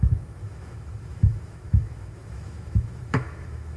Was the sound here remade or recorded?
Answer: remade